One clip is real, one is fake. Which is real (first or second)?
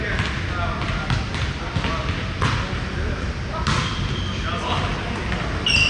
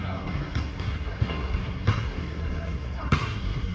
first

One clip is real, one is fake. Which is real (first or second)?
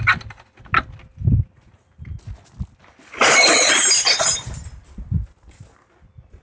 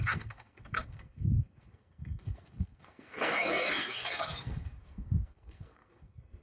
first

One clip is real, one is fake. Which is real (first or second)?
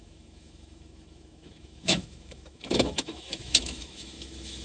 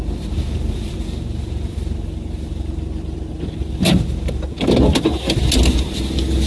second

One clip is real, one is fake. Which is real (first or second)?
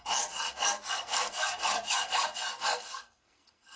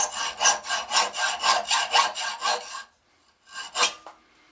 second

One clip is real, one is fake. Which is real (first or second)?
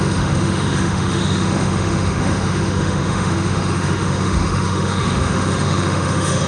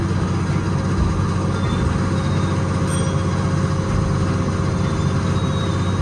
second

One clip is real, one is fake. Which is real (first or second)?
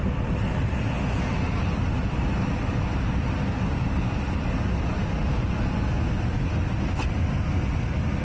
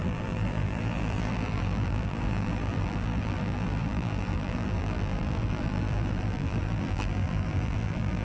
first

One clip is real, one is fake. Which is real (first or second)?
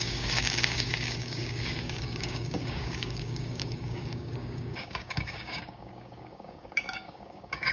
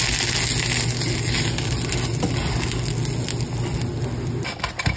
second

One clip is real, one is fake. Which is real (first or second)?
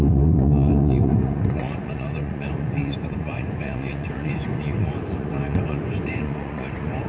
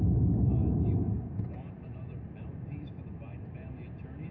second